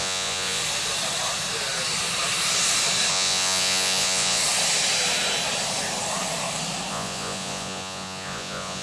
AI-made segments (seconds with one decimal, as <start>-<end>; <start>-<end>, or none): 0.0-0.6; 3.1-4.4; 6.9-8.8